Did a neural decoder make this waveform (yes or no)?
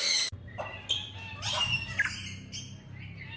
no